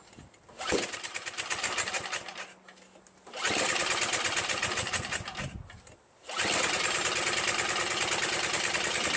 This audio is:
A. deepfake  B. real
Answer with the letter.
B